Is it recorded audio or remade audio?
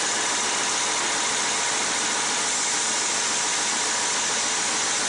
recorded